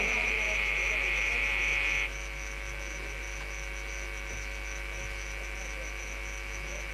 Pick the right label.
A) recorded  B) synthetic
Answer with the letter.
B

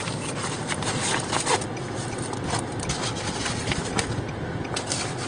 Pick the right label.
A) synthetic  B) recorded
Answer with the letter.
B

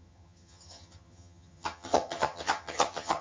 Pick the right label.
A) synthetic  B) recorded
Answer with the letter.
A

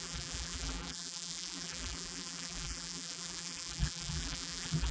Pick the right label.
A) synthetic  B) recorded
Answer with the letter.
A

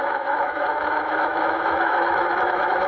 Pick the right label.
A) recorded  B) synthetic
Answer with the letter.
B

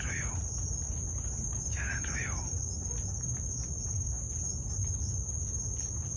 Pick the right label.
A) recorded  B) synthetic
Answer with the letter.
A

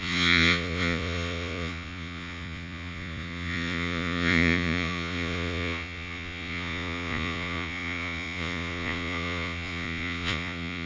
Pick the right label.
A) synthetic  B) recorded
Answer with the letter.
A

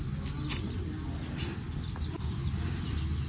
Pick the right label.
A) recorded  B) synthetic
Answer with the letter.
A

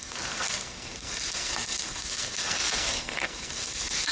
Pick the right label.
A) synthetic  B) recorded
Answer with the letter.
A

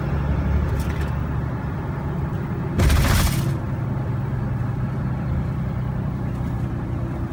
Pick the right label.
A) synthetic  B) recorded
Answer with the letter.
A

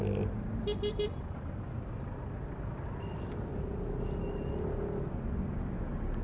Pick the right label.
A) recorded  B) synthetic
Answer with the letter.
A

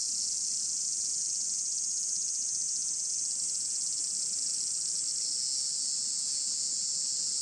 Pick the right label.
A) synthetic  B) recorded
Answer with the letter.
B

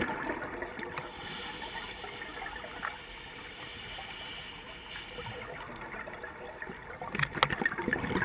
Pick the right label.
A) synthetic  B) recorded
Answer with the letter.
B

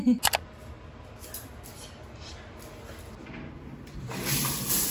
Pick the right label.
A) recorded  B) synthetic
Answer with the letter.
A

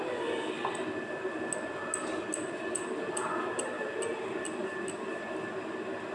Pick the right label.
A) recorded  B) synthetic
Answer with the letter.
A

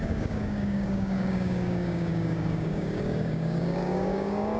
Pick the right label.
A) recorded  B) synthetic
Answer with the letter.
B